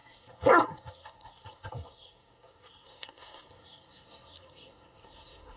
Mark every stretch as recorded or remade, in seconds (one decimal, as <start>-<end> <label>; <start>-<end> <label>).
0.0-5.6 remade